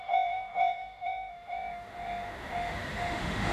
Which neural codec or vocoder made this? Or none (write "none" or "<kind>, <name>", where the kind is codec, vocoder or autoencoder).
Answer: autoencoder, DAC-VAE